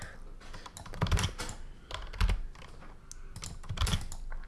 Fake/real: real